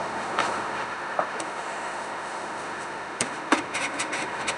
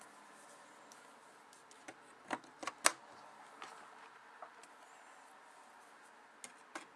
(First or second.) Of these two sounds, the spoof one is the first